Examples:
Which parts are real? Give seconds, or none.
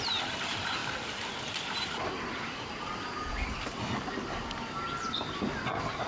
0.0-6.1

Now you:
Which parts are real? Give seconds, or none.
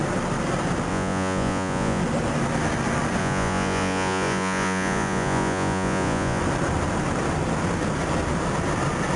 0.0-0.9; 2.0-3.2; 6.4-9.2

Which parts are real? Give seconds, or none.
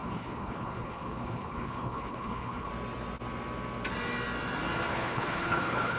2.7-4.9